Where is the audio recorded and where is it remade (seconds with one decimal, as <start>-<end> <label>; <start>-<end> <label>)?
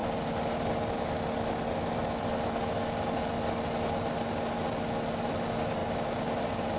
0.0-5.8 recorded; 5.8-6.8 remade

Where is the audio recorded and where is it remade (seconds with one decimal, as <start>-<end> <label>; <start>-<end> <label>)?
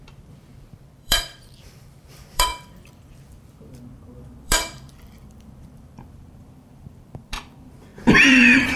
0.0-8.8 remade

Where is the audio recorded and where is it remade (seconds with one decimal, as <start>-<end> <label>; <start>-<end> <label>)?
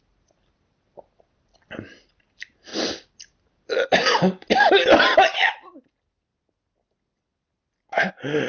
0.0-8.5 recorded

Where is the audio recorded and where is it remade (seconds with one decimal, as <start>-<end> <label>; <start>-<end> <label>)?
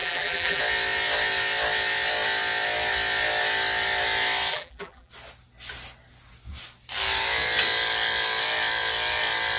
0.0-0.6 remade; 0.6-4.5 recorded; 4.5-5.1 remade; 5.1-9.6 recorded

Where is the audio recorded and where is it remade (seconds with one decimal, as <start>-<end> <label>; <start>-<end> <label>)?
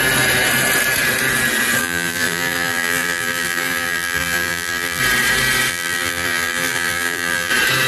0.0-1.8 recorded; 1.8-5.0 remade; 5.0-5.7 recorded; 5.7-7.5 remade; 7.5-7.9 recorded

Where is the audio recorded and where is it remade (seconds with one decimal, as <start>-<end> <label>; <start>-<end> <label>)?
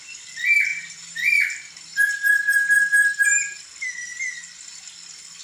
0.0-0.7 recorded; 0.7-2.2 remade; 2.2-3.0 recorded; 3.0-3.6 remade; 3.6-5.4 recorded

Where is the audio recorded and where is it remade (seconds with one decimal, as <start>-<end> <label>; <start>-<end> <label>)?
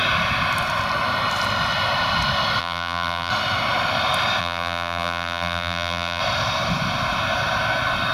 0.0-2.6 recorded; 2.6-3.3 remade; 3.3-4.4 recorded; 4.4-6.2 remade; 6.2-8.1 recorded